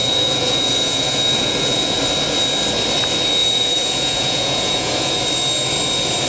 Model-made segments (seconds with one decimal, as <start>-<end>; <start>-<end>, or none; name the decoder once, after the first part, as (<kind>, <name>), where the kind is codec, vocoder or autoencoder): 0.0-2.0 (vocoder, Vocos); 3.4-5.1